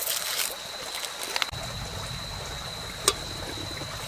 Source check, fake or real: real